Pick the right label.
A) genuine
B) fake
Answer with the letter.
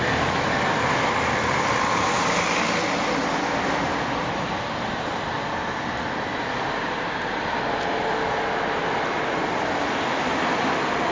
A